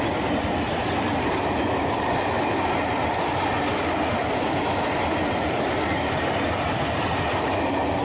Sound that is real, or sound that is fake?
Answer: real